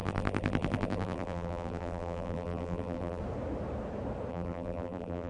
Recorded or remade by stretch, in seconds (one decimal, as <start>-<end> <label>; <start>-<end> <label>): 0.0-3.2 remade; 3.2-4.3 recorded; 4.3-5.3 remade